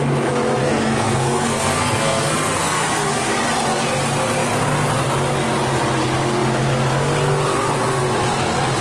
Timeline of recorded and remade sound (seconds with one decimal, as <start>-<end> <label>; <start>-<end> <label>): 0.0-0.6 recorded; 0.6-3.3 remade; 3.3-8.8 recorded